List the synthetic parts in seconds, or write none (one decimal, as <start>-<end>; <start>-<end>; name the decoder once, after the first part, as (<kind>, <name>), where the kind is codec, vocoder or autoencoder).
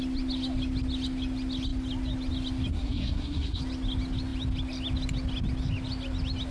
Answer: 2.7-3.6 (codec, SNAC)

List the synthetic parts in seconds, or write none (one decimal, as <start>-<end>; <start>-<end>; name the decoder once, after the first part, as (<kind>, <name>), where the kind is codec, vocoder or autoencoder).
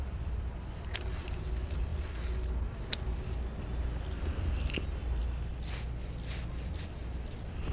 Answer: 0.0-1.9 (vocoder, BigVGAN v2); 4.3-5.2; 7.3-7.7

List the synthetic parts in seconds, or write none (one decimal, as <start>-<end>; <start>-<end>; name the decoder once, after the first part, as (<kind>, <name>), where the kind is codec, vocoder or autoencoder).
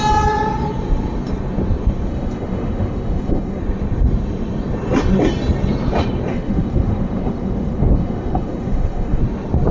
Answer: 2.1-3.6 (autoencoder, DAC-VAE); 6.3-9.2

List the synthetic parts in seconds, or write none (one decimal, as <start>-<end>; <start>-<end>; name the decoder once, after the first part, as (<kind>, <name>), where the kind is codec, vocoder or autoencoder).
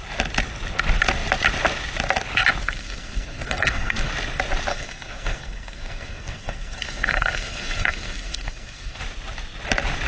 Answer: 2.6-4.1 (codec, SNAC); 4.7-9.0